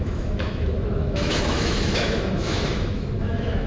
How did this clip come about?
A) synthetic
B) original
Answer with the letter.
A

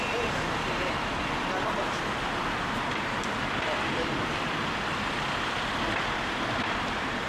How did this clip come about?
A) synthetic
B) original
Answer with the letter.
A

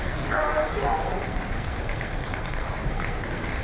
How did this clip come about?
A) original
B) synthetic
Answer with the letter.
B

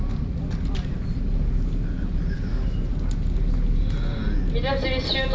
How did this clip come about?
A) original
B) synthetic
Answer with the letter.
A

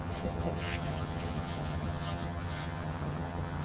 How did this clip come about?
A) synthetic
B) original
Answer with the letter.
A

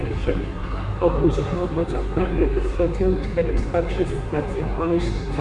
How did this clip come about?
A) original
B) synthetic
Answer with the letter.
B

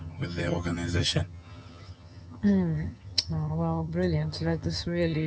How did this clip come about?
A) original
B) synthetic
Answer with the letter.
B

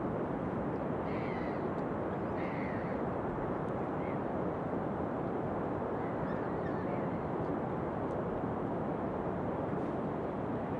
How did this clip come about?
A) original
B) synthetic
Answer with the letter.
A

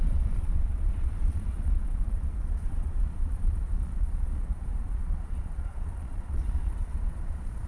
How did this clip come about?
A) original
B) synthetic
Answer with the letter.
B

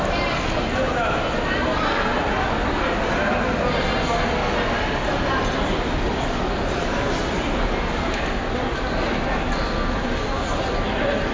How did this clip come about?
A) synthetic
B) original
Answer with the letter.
B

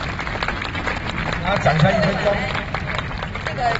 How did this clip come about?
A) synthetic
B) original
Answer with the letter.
B